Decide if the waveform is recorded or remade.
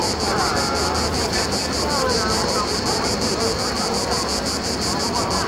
recorded